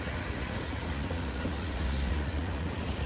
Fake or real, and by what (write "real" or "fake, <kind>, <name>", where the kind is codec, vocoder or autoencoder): fake, vocoder, Vocos